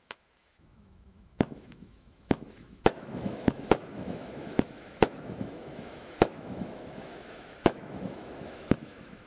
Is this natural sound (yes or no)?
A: no